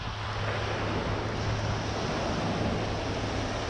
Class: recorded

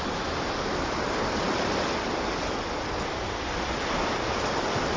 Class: recorded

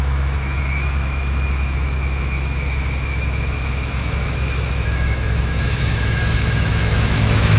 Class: remade